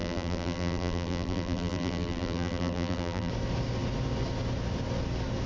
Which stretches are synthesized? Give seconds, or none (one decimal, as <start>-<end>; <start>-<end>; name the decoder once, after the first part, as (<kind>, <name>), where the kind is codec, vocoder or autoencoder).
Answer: 0.0-3.3 (vocoder, BigVGAN v2)